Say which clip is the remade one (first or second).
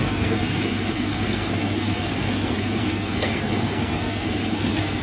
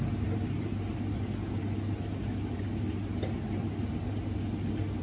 first